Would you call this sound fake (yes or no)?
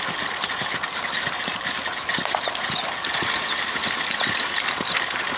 no